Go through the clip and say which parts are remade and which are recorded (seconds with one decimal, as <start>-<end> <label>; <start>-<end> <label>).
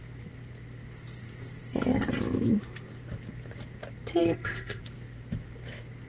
0.0-4.2 recorded; 4.2-4.8 remade; 4.8-6.1 recorded